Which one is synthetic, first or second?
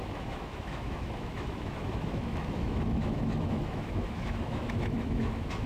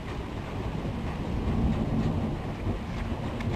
first